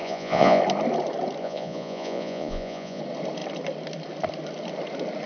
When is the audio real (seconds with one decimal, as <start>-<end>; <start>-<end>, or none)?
0.6-1.4; 3.0-5.3